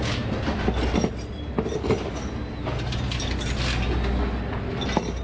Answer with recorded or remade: recorded